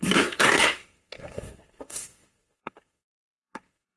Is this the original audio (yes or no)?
no